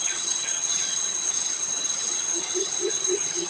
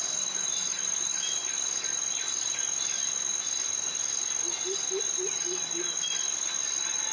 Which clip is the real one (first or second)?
second